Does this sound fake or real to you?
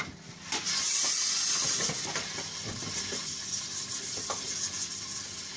real